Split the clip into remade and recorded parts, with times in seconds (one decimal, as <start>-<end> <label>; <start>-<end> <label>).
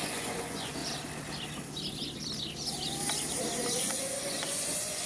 0.0-0.8 remade; 0.8-3.7 recorded; 3.7-5.1 remade